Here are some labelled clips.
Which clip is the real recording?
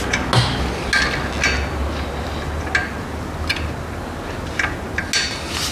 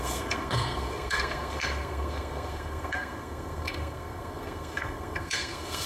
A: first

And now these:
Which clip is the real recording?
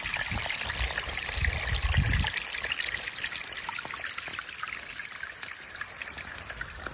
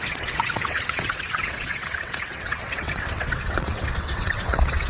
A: first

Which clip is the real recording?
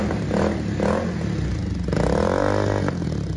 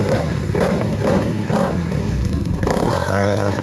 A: first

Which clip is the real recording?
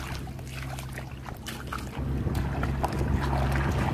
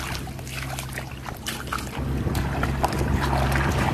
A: first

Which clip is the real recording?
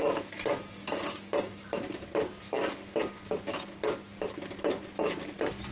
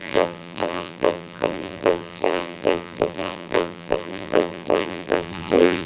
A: first